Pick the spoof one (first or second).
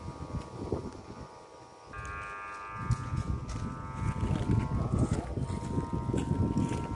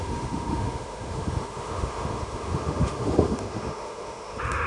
second